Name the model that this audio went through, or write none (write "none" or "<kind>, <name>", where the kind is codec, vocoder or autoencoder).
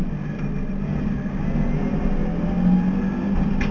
none